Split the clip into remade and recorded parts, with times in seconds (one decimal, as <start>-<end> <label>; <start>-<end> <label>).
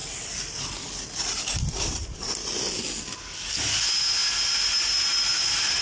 0.0-5.8 recorded